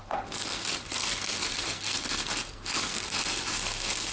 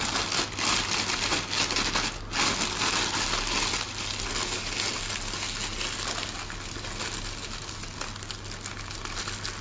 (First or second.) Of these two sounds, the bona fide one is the second